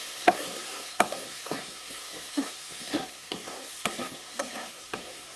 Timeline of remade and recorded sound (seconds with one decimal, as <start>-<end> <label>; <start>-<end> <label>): 0.0-5.4 remade

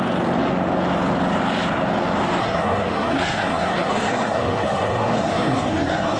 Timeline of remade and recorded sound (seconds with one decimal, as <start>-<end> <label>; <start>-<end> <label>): 0.0-2.4 recorded; 2.4-6.2 remade

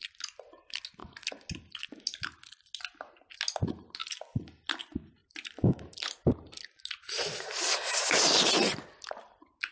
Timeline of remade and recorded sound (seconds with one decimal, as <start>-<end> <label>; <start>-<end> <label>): 0.0-9.7 recorded

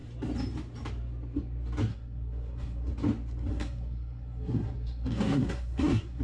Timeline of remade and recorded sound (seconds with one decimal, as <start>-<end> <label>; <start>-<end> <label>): 0.0-1.9 recorded; 1.9-2.9 remade; 2.9-3.5 recorded; 3.5-6.2 remade

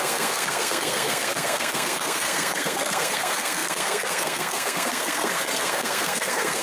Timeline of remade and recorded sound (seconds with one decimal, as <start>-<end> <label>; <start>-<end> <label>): 0.0-6.6 remade

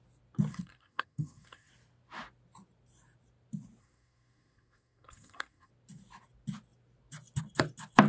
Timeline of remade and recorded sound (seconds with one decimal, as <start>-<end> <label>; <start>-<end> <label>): 0.0-0.5 recorded; 0.5-1.7 remade; 1.7-3.8 recorded; 3.8-5.7 remade; 5.7-8.1 recorded

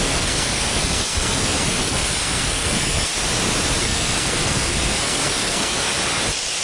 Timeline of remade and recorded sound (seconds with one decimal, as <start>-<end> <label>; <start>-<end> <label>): 0.0-3.1 remade; 3.1-3.8 recorded; 3.8-5.9 remade; 5.9-6.6 recorded